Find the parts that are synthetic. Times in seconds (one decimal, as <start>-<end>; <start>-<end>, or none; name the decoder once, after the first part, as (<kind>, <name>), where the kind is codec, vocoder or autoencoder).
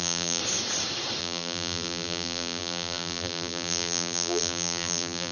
0.0-0.4 (vocoder, BigVGAN v2); 1.2-5.3